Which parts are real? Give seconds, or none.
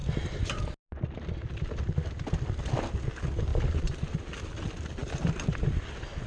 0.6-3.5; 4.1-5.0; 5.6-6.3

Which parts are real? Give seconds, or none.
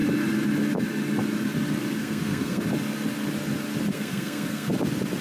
0.0-2.0; 2.6-3.9; 4.7-5.2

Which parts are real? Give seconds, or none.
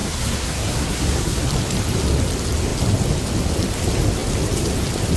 1.4-5.2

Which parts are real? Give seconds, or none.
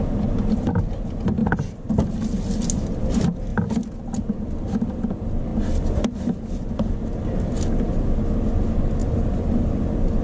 0.0-1.4; 2.1-3.5; 4.1-9.0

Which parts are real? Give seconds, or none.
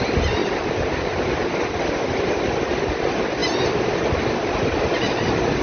0.0-5.6